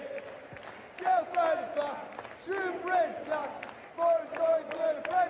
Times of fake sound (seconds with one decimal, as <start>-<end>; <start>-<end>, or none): none